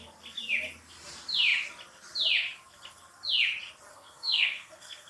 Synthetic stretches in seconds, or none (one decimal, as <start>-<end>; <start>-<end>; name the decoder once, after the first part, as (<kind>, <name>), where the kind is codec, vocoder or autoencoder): 3.9-5.1 (codec, SNAC)